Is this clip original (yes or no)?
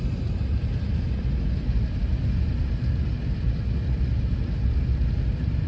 yes